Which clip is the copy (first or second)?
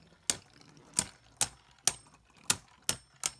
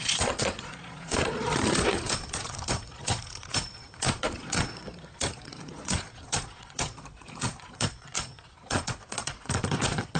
second